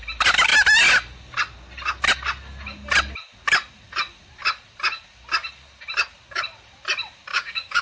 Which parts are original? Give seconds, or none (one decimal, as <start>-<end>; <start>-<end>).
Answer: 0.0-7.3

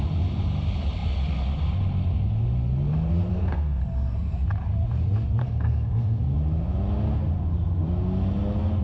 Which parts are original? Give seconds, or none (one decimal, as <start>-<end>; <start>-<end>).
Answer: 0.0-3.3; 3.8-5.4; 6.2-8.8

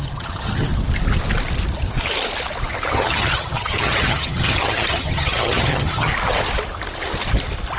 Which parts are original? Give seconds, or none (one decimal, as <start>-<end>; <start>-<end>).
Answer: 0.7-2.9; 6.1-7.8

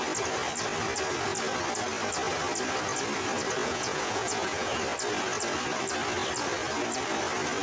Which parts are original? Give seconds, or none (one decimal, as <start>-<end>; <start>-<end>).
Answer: 0.0-3.6; 4.8-7.6

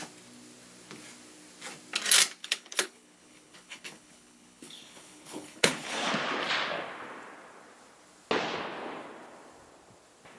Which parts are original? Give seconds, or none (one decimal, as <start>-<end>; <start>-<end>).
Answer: 0.0-2.4; 6.1-10.4